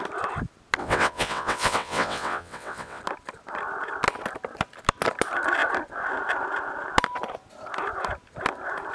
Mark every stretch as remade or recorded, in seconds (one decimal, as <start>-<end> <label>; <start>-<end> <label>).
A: 0.0-0.8 recorded; 0.8-3.0 remade; 3.0-8.9 recorded